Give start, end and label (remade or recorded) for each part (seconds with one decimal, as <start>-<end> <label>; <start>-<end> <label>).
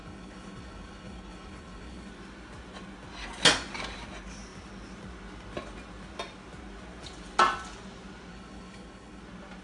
0.0-2.1 remade; 2.1-8.3 recorded; 8.3-9.2 remade; 9.2-9.6 recorded